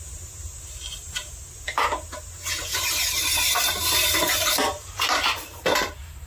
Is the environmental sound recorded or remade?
remade